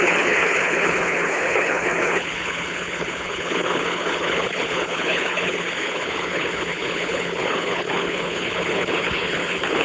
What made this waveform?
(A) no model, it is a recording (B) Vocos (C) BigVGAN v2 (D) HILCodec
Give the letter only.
D